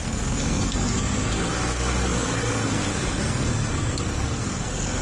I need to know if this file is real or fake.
fake